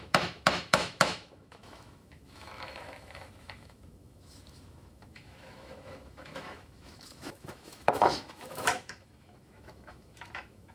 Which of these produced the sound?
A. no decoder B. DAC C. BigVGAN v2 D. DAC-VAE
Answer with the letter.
D